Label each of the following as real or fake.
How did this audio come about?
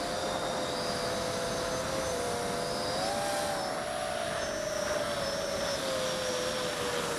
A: real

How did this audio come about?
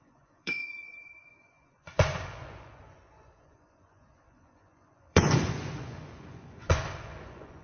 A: fake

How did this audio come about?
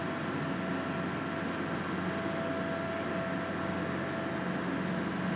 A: real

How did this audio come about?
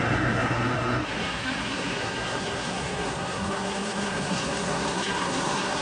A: fake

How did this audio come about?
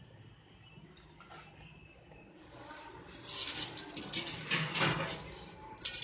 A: real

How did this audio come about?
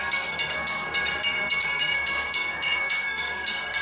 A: fake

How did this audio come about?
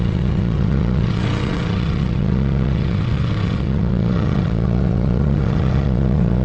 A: fake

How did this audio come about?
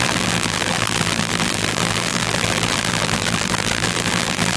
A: fake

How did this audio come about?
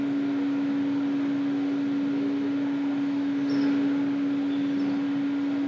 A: real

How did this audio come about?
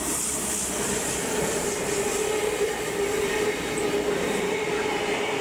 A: real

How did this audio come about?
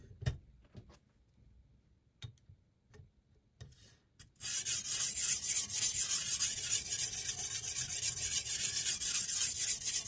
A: real